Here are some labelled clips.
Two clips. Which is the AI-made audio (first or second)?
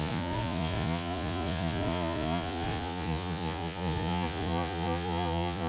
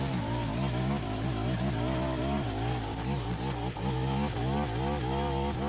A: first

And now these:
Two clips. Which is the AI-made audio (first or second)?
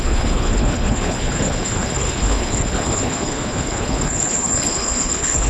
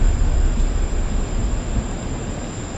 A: first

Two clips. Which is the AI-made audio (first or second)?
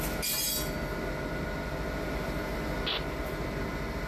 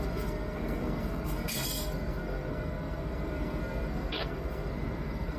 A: second